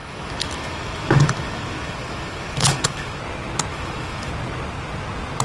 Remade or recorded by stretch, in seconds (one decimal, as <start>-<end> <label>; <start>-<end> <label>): 0.0-3.2 remade; 3.2-3.7 recorded; 3.7-4.3 remade; 4.3-5.4 recorded